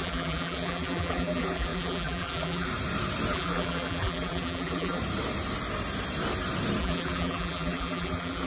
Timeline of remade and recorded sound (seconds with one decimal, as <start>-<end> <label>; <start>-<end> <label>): 0.0-2.7 remade; 2.7-3.3 recorded; 3.3-5.0 remade; 5.0-6.8 recorded; 6.8-8.5 remade